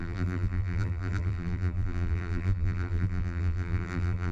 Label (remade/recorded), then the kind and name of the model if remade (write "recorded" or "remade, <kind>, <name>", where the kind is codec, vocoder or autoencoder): remade, vocoder, BigVGAN v2